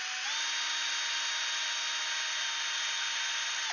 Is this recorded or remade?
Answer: recorded